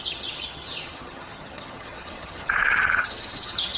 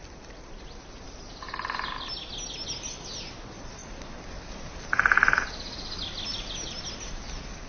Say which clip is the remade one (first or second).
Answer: first